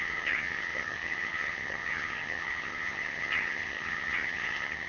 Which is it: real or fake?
fake